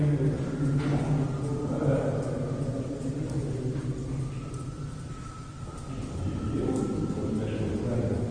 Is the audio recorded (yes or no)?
yes